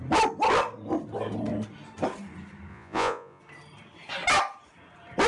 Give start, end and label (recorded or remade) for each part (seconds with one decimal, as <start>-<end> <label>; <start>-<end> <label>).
0.0-2.7 recorded; 2.7-3.4 remade; 3.4-5.3 recorded